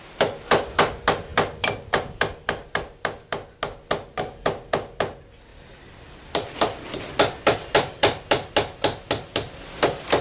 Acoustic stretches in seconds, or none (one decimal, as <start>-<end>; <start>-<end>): 0.0-1.3; 2.7-5.5; 8.5-10.2